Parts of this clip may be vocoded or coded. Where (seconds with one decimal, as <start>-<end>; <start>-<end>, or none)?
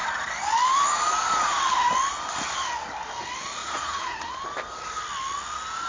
3.6-4.3